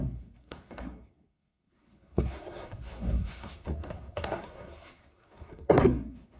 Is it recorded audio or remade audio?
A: remade